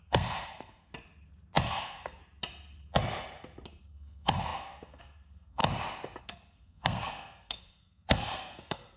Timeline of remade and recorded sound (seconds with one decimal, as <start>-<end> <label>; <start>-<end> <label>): 0.0-0.9 remade; 0.9-1.6 recorded; 1.6-2.2 remade; 2.2-3.8 recorded; 3.8-5.6 remade; 5.6-6.2 recorded; 6.2-9.0 remade